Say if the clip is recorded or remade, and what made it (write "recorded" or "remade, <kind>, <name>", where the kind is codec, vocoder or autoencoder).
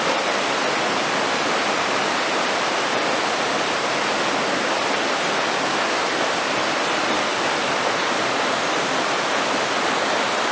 recorded